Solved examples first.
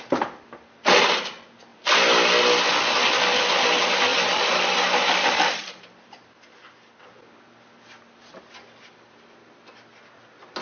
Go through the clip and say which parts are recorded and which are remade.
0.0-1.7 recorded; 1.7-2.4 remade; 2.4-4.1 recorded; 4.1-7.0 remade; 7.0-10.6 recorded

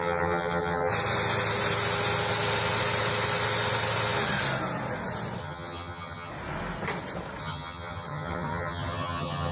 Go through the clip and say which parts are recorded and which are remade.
0.0-0.9 remade; 0.9-5.4 recorded; 5.4-6.3 remade; 6.3-7.4 recorded; 7.4-9.5 remade

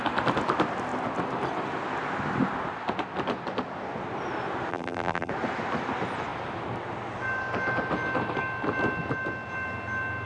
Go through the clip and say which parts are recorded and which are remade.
0.0-4.7 recorded; 4.7-5.3 remade; 5.3-10.3 recorded

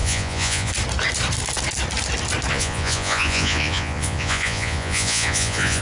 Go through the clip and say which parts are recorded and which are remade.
0.0-0.7 remade; 0.7-2.5 recorded; 2.5-5.8 remade

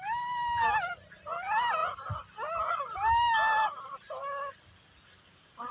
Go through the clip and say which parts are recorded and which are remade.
0.0-5.7 recorded